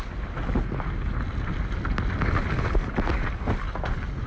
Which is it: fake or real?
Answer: real